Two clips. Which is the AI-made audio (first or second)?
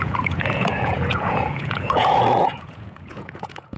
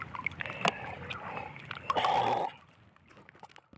first